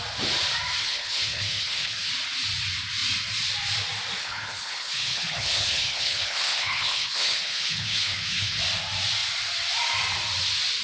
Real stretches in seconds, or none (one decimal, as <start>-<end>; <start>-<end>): 0.0-0.8; 2.1-4.2; 8.6-10.8